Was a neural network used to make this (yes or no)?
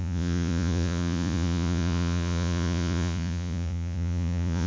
yes